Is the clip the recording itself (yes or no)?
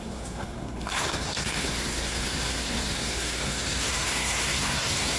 no